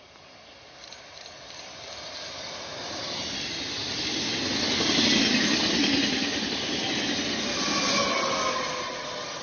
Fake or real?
real